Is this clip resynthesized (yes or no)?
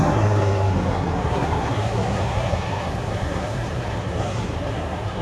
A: yes